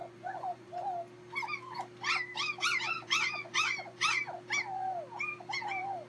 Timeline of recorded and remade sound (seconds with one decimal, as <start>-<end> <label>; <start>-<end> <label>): 0.0-0.7 remade; 0.7-2.6 recorded; 2.6-4.2 remade; 4.2-6.1 recorded